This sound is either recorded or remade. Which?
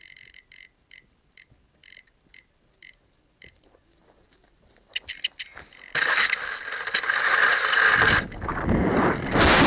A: recorded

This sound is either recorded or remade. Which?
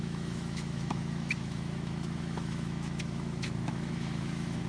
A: remade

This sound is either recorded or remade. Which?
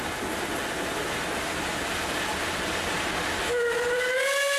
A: recorded